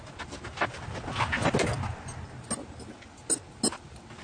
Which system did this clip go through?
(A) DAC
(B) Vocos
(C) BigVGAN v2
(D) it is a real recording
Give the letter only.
D